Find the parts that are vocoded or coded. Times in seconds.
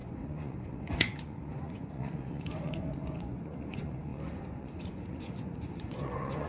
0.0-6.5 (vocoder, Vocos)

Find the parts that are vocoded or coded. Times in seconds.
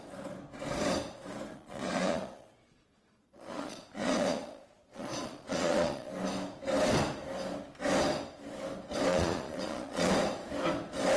1.5-6.1 (vocoder, Vocos); 9.1-10.1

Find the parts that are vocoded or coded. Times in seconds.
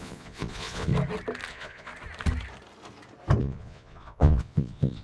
0.0-0.9 (vocoder, Vocos); 1.5-1.9; 3.4-5.0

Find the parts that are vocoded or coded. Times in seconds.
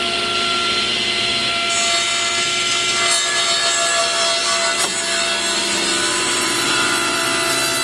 6.1-7.2 (vocoder, Vocos)